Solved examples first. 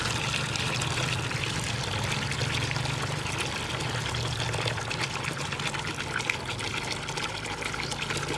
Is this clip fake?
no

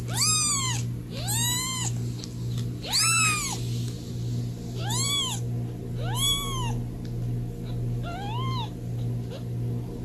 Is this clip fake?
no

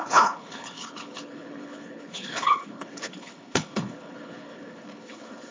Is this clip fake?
yes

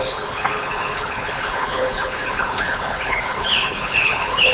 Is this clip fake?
yes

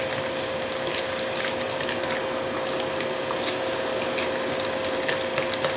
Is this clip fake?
no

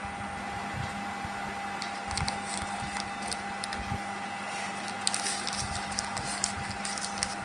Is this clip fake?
no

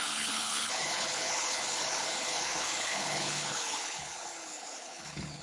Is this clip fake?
yes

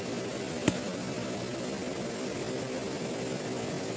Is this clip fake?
no